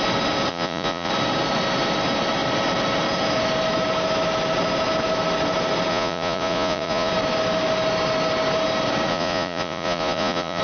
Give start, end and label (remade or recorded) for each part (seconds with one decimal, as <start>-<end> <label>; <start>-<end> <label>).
0.0-0.5 recorded; 0.5-1.1 remade; 1.1-5.9 recorded; 5.9-7.1 remade; 7.1-9.1 recorded; 9.1-10.6 remade